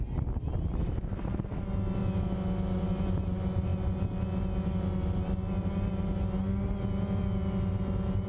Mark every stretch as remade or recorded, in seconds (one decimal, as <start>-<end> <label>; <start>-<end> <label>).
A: 0.0-8.3 recorded